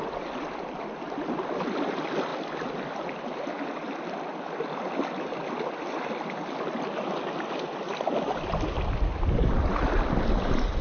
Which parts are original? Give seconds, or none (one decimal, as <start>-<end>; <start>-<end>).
0.0-10.8